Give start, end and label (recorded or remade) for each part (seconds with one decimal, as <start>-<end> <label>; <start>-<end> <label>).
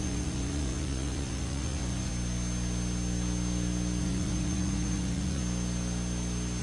0.0-2.1 remade; 2.1-4.0 recorded; 4.0-5.4 remade; 5.4-6.6 recorded